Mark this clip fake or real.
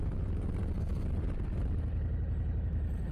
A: real